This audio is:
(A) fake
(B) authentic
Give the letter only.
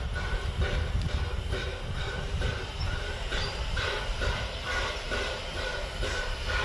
A